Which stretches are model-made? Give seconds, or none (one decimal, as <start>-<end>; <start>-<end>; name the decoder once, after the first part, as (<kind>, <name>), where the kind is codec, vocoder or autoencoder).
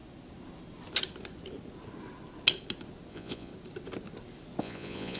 3.1-3.5 (vocoder, Vocos); 4.6-5.2